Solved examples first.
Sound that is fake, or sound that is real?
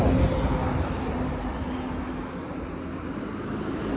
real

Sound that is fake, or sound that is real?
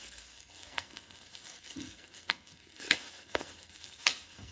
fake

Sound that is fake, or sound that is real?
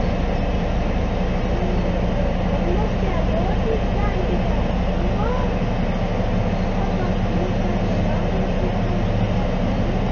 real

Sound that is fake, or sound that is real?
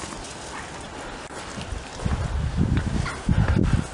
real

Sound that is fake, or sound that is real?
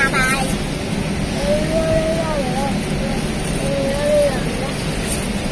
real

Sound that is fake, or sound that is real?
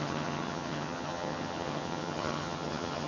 fake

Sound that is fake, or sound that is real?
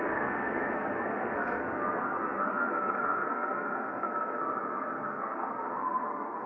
fake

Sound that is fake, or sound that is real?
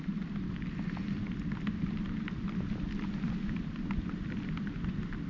real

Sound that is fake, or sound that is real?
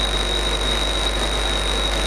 real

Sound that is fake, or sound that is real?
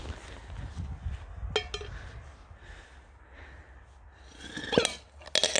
real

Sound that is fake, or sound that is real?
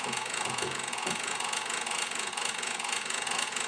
fake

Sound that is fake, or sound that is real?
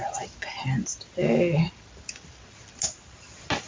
real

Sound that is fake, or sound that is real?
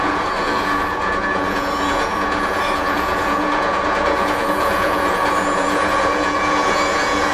fake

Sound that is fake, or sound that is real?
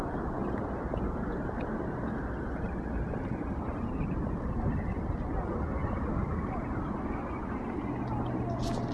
real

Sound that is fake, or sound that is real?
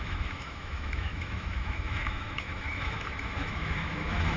fake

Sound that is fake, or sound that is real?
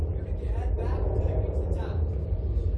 fake